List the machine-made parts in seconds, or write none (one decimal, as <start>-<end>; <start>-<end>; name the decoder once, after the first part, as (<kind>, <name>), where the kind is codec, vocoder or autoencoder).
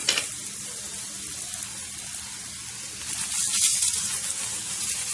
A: 3.7-4.2 (vocoder, Vocos)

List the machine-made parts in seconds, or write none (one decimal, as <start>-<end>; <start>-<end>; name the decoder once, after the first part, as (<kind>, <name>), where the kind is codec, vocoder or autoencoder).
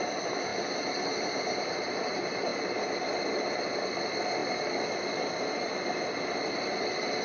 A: none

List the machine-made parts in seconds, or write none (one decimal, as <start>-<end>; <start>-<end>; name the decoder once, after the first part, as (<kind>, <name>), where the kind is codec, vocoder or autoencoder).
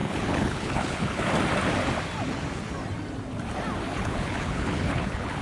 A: 0.0-1.2 (codec, HILCodec); 3.9-5.4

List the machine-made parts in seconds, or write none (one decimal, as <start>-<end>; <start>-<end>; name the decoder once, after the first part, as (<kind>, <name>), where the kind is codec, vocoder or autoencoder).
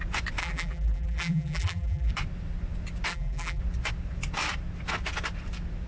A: 0.4-2.1 (vocoder, BigVGAN v2); 3.1-3.6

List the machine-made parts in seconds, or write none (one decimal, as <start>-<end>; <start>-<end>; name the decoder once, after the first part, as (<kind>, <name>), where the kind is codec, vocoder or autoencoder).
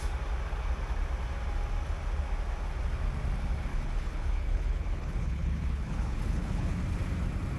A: 3.7-6.8 (codec, HILCodec)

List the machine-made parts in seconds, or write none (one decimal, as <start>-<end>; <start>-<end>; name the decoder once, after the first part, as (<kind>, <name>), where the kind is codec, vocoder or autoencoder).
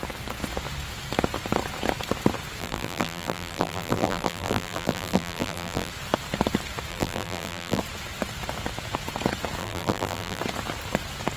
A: 2.6-5.9 (vocoder, BigVGAN v2); 6.9-7.8; 9.6-10.4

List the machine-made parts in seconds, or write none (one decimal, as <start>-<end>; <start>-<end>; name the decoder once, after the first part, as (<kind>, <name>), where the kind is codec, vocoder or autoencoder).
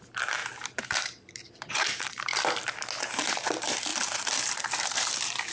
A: 0.0-2.3 (vocoder, BigVGAN v2); 3.0-5.5